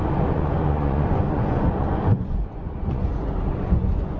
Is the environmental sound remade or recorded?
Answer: remade